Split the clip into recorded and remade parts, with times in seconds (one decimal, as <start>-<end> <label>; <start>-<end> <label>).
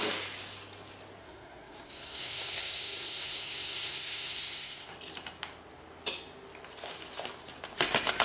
0.0-1.2 recorded; 1.2-4.9 remade; 4.9-8.2 recorded